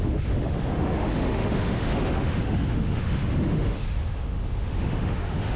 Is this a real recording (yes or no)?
no